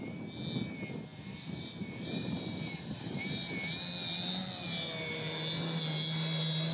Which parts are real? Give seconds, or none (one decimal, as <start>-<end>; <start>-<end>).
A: 0.0-1.1; 3.5-6.7